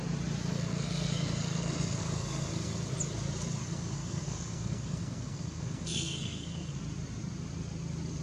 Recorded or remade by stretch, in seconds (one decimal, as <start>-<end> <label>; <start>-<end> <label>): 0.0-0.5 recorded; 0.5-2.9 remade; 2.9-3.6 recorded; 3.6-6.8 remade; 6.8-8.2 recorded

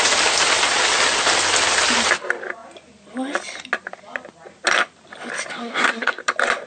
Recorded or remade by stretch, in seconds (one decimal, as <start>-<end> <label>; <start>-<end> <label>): 0.0-5.5 recorded; 5.5-6.2 remade; 6.2-6.7 recorded

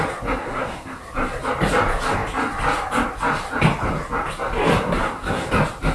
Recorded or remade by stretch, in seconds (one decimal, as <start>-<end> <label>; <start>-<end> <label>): 0.0-0.4 recorded; 0.4-1.0 remade; 1.0-4.7 recorded; 4.7-5.5 remade; 5.5-5.9 recorded

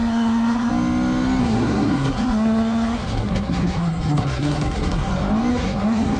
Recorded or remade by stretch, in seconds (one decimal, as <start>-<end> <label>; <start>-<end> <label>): 0.0-0.7 remade; 0.7-1.4 recorded; 1.4-5.1 remade; 5.1-5.5 recorded; 5.5-6.2 remade